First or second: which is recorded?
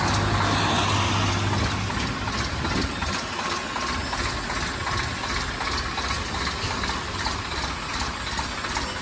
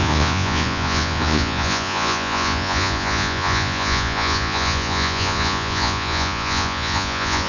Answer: first